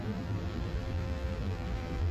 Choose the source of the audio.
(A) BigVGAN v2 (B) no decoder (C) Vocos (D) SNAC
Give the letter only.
A